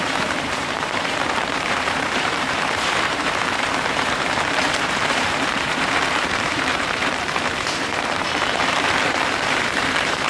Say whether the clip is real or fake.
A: fake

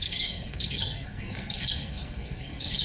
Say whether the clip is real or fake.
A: fake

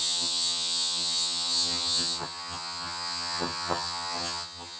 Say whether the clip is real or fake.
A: fake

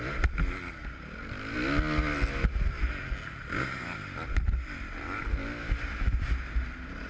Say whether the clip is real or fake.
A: real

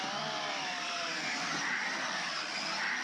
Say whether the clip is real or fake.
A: real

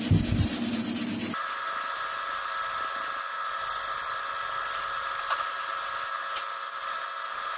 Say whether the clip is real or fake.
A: real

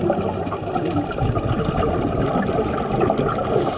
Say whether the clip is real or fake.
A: real